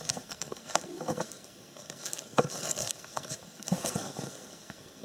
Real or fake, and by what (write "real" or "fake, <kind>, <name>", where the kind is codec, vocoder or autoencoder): fake, codec, SNAC